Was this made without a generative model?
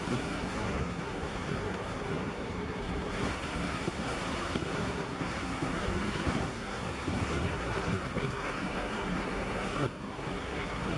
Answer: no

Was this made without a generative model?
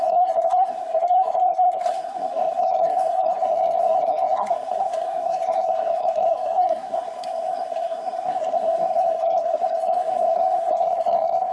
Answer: no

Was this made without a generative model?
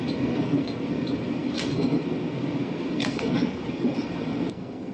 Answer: no